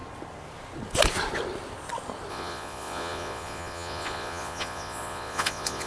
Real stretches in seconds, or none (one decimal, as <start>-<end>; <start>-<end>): 0.0-2.3